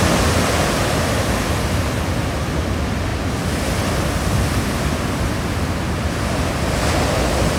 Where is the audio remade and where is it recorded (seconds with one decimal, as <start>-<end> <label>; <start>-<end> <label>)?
0.0-7.6 recorded